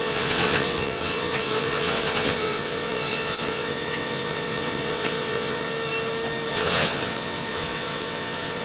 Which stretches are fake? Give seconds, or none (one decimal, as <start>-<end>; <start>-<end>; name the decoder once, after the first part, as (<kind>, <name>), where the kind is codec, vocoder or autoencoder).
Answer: 0.0-5.7 (vocoder, WaveNeXt); 6.5-8.6